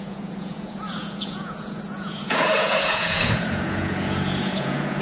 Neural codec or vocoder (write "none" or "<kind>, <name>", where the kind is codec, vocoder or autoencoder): vocoder, Vocos